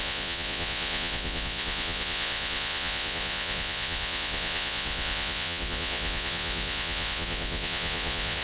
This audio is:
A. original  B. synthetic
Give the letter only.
B